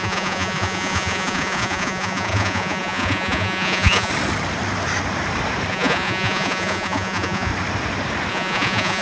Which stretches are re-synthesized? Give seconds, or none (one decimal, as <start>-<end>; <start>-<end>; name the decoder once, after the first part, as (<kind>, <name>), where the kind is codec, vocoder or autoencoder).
0.0-4.1 (vocoder, Vocos); 5.7-7.5; 8.3-9.0